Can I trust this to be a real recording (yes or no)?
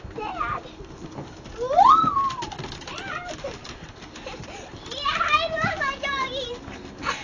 yes